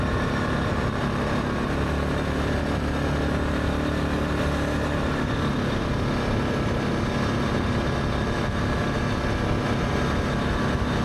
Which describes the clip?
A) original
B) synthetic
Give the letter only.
A